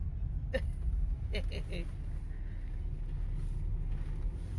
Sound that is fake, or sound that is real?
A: real